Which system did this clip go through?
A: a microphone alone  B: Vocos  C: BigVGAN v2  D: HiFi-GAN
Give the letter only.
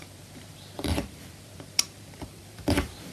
C